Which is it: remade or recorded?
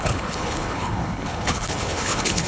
remade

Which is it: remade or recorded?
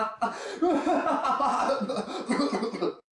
remade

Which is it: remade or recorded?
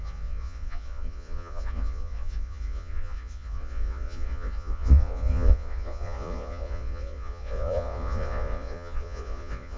remade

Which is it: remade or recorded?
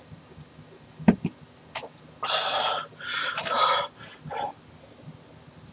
recorded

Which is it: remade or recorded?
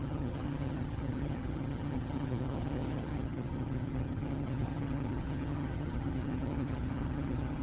remade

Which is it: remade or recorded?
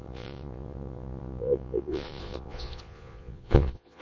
remade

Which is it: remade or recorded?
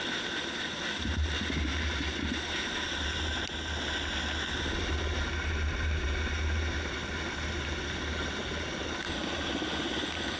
recorded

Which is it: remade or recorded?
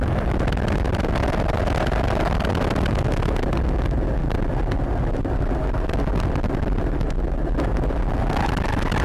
recorded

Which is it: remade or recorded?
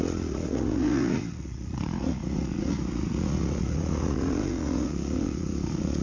remade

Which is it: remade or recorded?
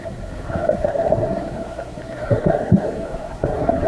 remade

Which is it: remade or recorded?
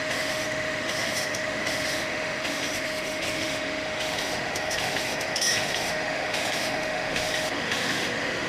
remade